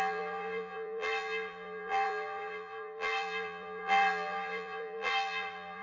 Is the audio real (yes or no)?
no